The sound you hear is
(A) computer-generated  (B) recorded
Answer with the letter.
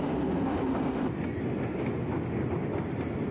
B